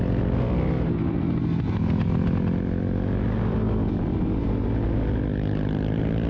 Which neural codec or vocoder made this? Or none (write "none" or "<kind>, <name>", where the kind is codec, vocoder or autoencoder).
none